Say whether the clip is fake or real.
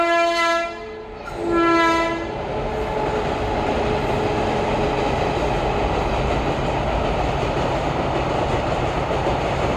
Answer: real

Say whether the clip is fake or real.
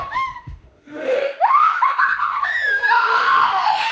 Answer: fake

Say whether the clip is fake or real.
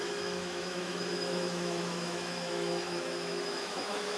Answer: fake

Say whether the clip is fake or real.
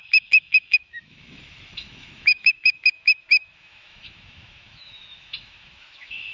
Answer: fake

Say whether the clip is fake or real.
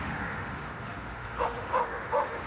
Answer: fake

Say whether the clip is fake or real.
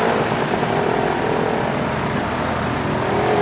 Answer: real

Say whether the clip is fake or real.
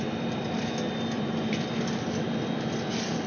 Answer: real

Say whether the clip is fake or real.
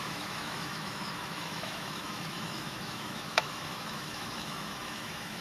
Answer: fake